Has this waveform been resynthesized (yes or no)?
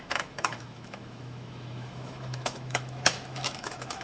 yes